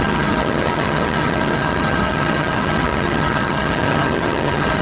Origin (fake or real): fake